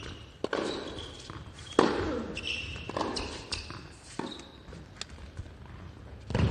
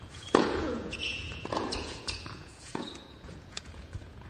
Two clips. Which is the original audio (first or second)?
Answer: first